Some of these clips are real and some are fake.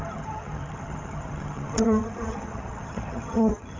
fake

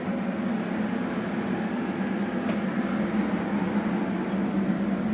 real